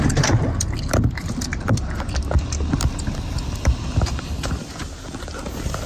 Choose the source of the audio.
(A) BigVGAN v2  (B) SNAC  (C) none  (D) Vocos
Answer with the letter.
C